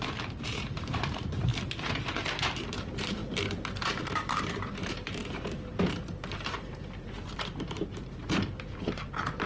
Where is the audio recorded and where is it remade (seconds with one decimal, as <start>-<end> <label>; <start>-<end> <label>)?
0.0-1.5 remade; 1.5-2.4 recorded; 2.4-3.2 remade; 3.2-4.0 recorded; 4.0-9.5 remade

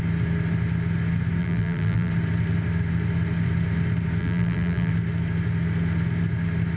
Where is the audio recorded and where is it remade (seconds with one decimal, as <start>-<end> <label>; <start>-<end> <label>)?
0.0-1.4 recorded; 1.4-2.1 remade; 2.1-4.2 recorded; 4.2-4.9 remade; 4.9-6.8 recorded

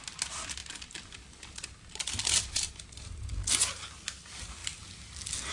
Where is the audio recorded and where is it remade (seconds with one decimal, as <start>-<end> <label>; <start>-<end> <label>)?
0.0-5.5 recorded

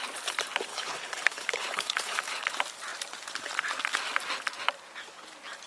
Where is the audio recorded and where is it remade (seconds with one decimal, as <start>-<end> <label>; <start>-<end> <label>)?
0.0-0.7 recorded; 0.7-2.5 remade; 2.5-5.7 recorded